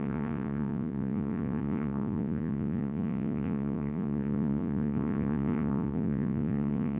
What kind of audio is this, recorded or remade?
remade